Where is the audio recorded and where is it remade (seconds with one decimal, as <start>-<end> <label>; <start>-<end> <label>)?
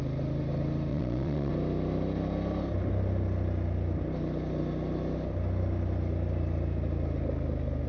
0.0-0.9 recorded; 0.9-1.5 remade; 1.5-7.9 recorded